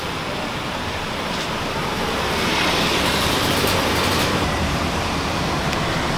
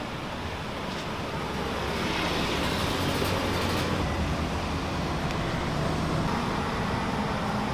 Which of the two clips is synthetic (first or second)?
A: first